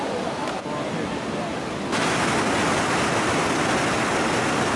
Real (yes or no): yes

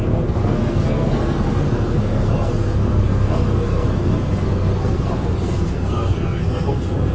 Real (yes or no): no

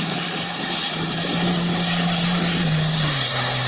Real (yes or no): no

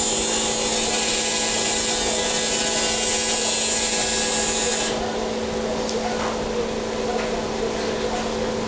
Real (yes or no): yes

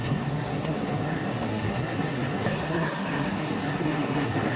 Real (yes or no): no